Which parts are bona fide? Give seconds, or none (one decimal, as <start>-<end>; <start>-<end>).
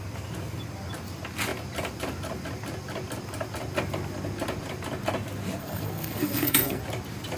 0.0-5.6; 6.8-7.4